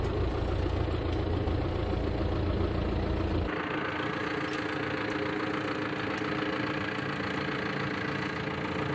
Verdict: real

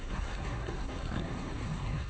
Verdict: fake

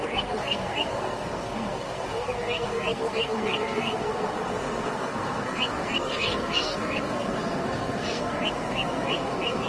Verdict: fake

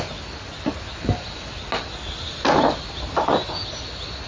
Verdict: real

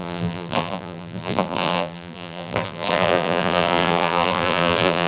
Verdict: fake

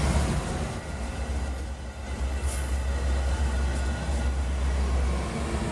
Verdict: real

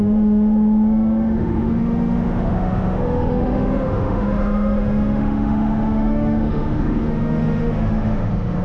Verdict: fake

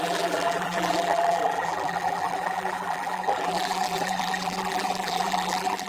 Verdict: fake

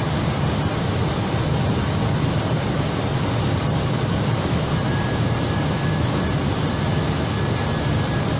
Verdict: real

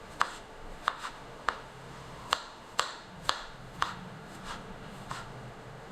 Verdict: fake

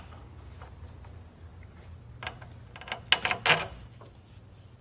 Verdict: real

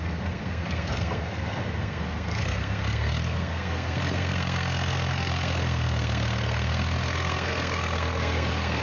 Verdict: fake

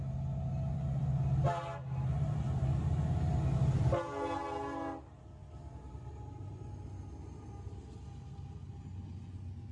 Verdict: real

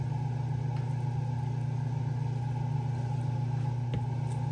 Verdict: real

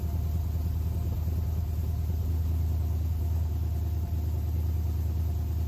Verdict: real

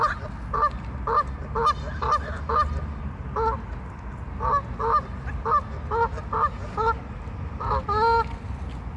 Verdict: real